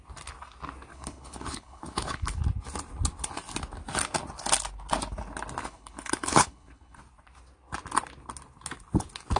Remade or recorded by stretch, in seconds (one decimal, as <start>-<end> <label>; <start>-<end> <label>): 0.0-0.9 recorded; 0.9-2.4 remade; 2.4-5.6 recorded; 5.6-7.0 remade; 7.0-9.4 recorded